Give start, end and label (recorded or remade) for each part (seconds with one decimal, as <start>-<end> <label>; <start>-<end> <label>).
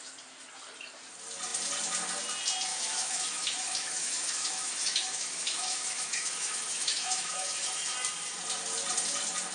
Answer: 0.0-2.7 recorded; 2.7-7.9 remade; 7.9-9.5 recorded